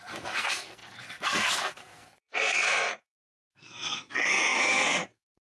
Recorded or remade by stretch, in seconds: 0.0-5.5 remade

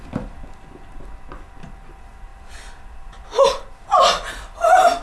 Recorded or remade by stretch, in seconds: 0.0-5.0 recorded

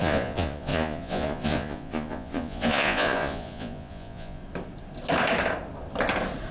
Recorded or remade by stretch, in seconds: 0.0-4.4 remade; 4.4-6.5 recorded

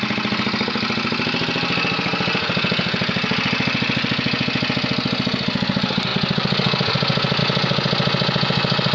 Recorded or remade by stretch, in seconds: 0.0-8.9 recorded

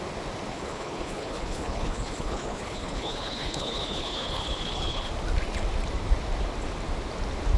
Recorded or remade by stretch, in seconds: 0.0-0.5 recorded; 0.5-5.1 remade; 5.1-7.6 recorded

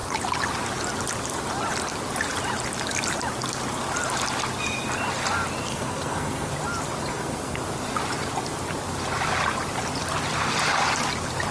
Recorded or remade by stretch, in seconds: 0.0-5.7 recorded; 5.7-6.5 remade; 6.5-7.1 recorded; 7.1-7.6 remade; 7.6-11.5 recorded